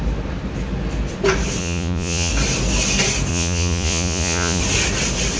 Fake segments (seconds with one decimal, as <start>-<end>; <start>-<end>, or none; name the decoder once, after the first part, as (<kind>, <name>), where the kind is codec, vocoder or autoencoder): 1.6-2.3 (vocoder, Vocos); 3.3-4.6